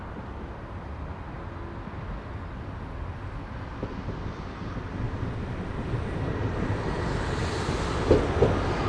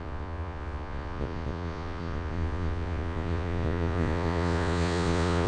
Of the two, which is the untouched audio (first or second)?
first